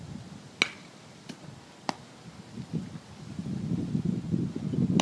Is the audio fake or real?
real